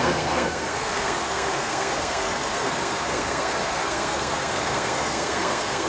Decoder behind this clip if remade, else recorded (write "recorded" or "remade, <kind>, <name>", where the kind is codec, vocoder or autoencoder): remade, codec, SNAC